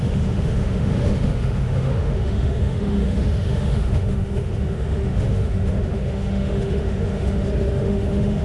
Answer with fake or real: fake